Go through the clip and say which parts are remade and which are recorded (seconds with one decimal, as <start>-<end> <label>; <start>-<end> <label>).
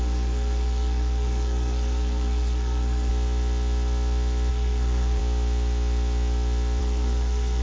0.0-3.1 remade; 3.1-4.5 recorded; 4.5-5.2 remade; 5.2-6.8 recorded; 6.8-7.6 remade